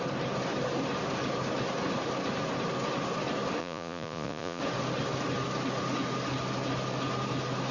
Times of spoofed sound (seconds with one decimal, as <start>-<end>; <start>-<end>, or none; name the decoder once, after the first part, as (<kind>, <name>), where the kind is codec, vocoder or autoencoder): 3.6-4.6 (vocoder, Vocos)